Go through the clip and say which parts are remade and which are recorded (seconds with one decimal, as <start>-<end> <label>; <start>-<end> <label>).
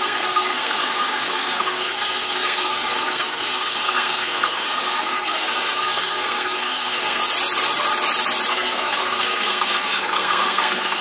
0.0-7.2 remade; 7.2-8.5 recorded; 8.5-11.0 remade